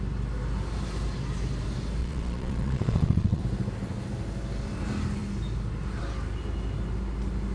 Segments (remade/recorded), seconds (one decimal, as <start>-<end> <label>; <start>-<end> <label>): 0.0-2.0 recorded; 2.0-3.4 remade; 3.4-7.5 recorded